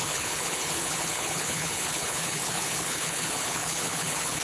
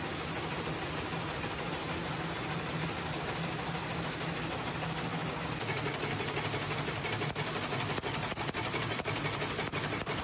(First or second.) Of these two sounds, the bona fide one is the second